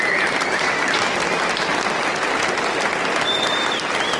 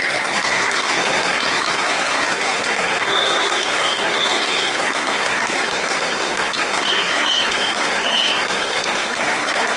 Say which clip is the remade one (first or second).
second